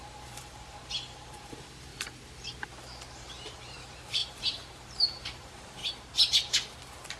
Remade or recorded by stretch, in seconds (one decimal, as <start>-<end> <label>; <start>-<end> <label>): 0.0-1.9 remade; 1.9-3.1 recorded; 3.1-5.8 remade; 5.8-7.2 recorded